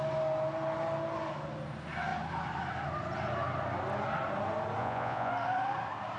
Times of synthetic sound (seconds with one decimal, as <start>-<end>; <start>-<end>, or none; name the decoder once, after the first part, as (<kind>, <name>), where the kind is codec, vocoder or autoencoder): 4.8-5.3 (vocoder, Vocos)